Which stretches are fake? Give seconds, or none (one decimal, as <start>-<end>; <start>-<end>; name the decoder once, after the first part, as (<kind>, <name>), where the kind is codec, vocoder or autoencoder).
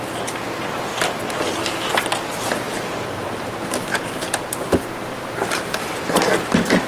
none